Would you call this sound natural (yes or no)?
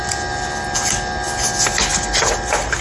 yes